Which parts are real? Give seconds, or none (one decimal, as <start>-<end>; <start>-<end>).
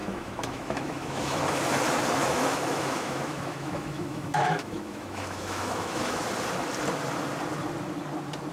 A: 1.4-2.2; 6.2-8.5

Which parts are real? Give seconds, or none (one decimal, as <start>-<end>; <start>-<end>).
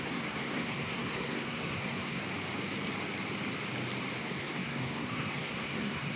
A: 2.2-4.2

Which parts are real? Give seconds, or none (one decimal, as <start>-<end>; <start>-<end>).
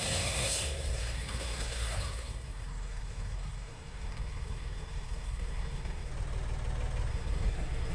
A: 6.1-7.1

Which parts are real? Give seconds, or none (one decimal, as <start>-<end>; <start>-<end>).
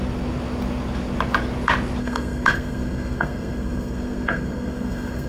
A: 0.0-2.0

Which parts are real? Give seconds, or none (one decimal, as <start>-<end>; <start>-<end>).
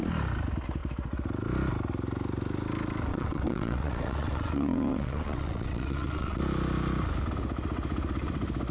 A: 0.0-3.1; 6.4-8.7